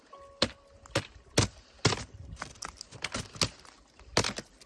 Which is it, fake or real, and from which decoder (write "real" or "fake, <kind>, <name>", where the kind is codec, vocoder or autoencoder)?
real